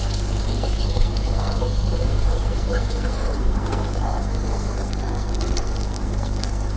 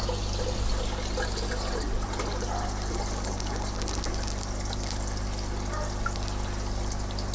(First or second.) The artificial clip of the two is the first